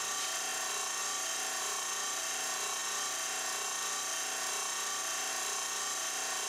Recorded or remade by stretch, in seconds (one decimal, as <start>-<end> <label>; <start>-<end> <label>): 0.0-6.5 recorded